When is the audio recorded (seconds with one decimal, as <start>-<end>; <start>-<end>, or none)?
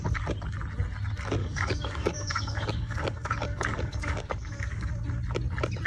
0.0-1.4; 4.9-5.9